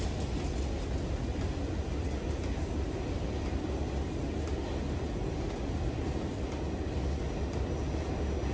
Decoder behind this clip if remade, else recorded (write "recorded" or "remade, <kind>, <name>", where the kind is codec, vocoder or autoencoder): recorded